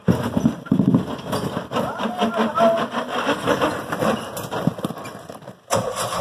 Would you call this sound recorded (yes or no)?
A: yes